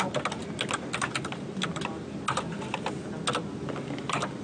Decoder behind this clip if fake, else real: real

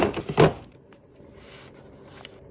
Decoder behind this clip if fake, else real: real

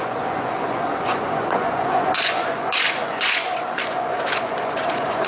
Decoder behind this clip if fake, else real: fake, vocoder, Vocos